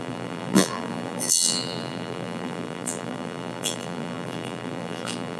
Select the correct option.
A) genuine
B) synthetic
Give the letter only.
B